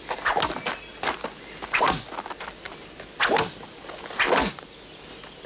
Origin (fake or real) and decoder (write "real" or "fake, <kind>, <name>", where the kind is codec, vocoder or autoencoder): real